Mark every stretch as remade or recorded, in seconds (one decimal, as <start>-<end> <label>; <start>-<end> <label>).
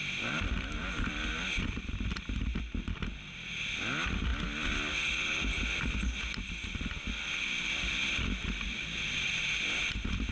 0.0-10.3 recorded